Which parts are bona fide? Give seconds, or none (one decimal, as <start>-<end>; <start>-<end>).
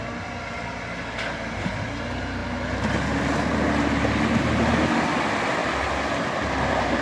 0.0-7.0